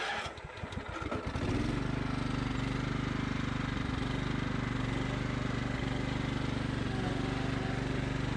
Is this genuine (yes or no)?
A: yes